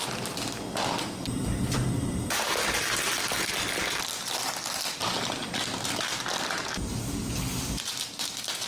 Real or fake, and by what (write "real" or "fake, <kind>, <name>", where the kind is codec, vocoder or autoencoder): real